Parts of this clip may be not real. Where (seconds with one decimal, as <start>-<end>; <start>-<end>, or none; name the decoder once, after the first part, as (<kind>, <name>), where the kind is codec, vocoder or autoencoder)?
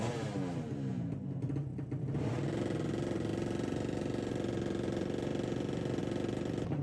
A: none